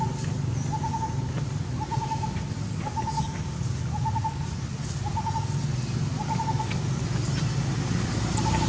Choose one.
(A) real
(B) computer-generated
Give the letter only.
A